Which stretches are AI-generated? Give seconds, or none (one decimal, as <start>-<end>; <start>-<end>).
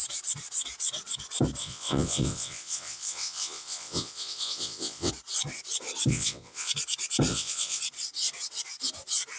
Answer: 1.6-5.1; 6.1-6.7; 7.3-7.8